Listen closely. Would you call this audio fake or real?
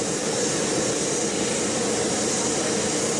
real